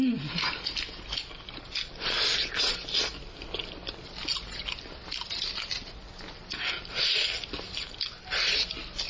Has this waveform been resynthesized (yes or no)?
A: no